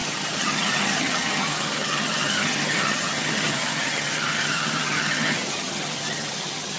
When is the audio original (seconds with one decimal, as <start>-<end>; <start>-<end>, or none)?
none